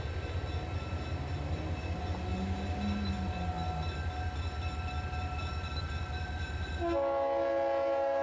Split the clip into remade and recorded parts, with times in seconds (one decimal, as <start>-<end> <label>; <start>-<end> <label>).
0.0-8.2 recorded